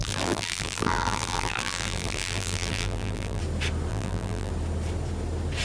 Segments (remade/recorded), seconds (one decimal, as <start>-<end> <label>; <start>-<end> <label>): 0.0-3.4 remade; 3.4-3.9 recorded; 3.9-4.5 remade; 4.5-5.6 recorded